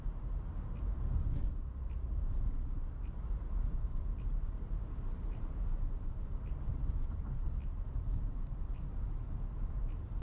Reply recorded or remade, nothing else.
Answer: remade